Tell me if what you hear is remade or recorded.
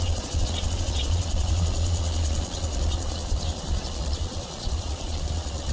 remade